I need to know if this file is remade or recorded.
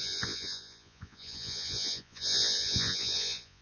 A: remade